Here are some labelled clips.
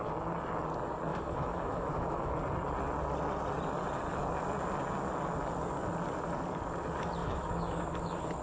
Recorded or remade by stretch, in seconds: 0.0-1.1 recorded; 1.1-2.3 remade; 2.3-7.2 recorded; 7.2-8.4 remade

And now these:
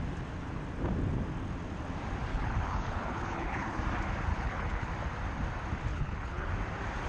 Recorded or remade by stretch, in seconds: 0.0-2.3 recorded; 2.3-3.8 remade; 3.8-4.3 recorded; 4.3-4.9 remade; 4.9-5.9 recorded; 5.9-6.5 remade; 6.5-7.1 recorded